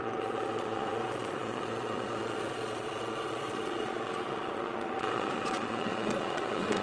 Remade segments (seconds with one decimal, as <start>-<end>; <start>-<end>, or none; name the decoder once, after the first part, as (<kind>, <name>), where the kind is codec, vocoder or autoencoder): 0.0-6.8 (vocoder, Vocos)